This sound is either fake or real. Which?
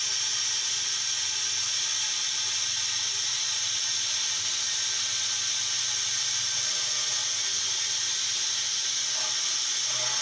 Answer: real